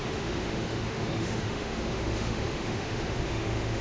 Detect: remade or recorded remade